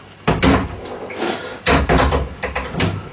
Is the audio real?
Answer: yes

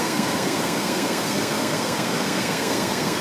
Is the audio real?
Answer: no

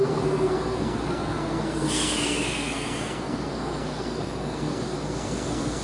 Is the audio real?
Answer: no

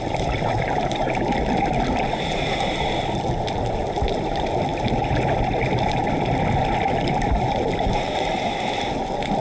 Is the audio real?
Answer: yes